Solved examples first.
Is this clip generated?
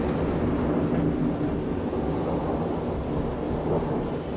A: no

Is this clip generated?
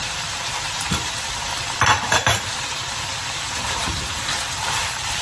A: yes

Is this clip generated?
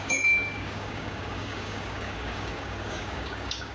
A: yes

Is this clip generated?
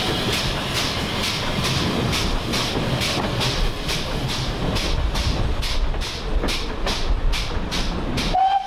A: no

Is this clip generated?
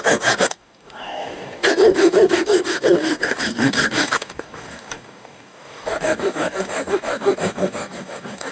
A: yes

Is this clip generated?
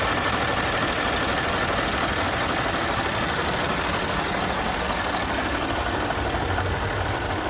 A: no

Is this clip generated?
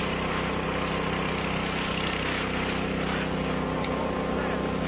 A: no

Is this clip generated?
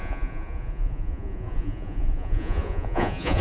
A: yes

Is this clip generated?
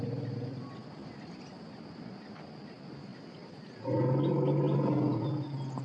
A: no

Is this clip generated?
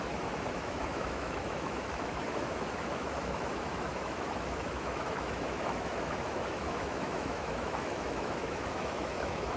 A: yes